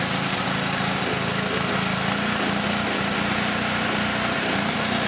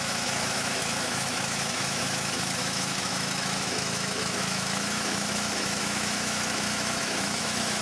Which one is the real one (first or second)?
first